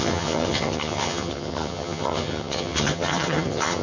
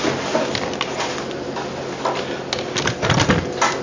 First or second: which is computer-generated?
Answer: first